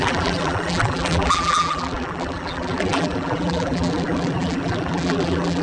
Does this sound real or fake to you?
fake